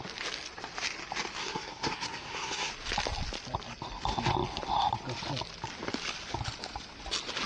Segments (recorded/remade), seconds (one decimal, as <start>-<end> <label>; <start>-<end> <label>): 0.0-1.4 recorded; 1.4-2.7 remade; 2.7-7.5 recorded